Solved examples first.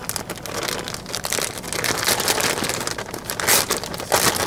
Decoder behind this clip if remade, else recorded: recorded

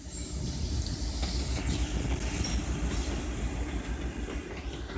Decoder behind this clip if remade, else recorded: recorded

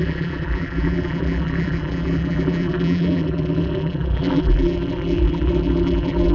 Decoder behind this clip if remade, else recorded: remade, vocoder, BigVGAN v2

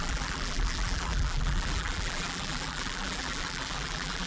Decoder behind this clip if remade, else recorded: remade, vocoder, BigVGAN v2